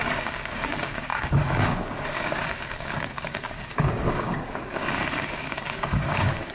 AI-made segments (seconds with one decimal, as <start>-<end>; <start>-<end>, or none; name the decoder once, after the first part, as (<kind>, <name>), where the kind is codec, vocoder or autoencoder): 0.0-6.5 (codec, DAC)